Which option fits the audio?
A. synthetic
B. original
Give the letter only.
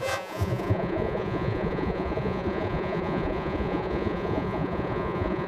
A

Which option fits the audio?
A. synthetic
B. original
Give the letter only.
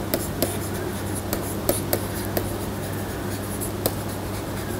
B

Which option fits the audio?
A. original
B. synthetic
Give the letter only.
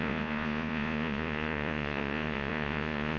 B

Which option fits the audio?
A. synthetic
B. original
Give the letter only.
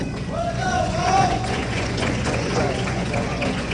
A